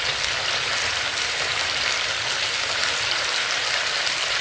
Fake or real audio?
fake